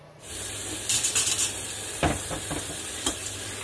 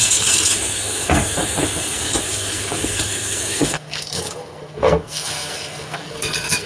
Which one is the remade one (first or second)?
second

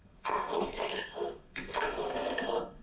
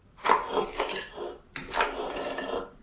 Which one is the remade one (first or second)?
first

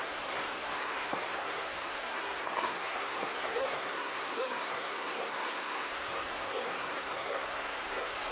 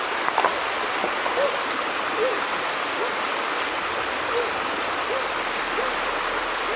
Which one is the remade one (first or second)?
first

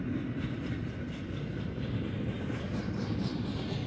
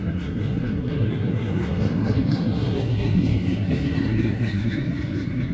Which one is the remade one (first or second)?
second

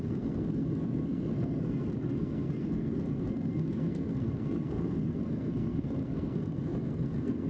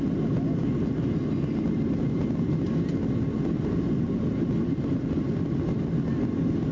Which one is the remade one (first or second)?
first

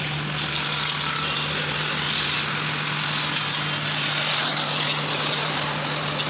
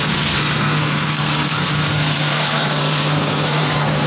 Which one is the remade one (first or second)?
second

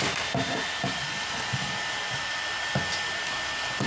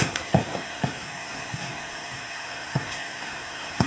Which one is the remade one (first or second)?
second